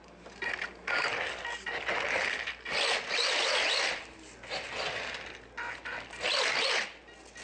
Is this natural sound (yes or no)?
yes